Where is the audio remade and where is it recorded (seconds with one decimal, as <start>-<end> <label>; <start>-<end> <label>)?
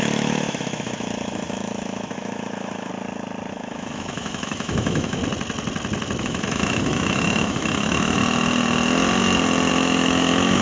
0.0-2.9 remade; 2.9-3.5 recorded; 3.5-5.2 remade; 5.2-6.2 recorded; 6.2-8.2 remade; 8.2-9.7 recorded; 9.7-10.6 remade